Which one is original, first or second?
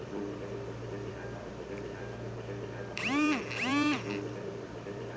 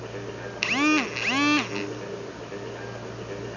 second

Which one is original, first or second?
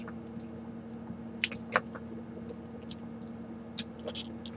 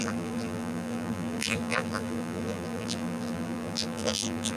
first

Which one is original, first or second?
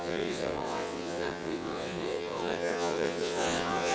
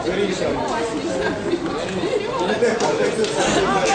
second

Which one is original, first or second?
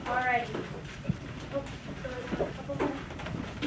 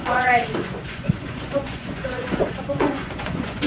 first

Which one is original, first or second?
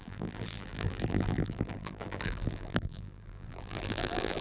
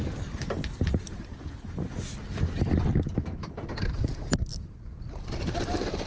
second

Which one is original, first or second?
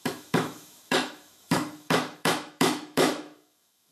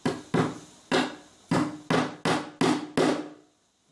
second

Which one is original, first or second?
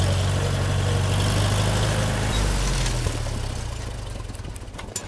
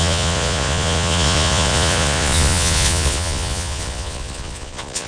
first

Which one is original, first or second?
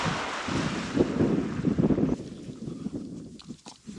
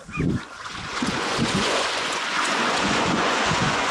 first